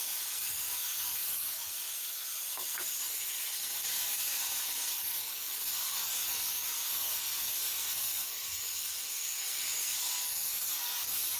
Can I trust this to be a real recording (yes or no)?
no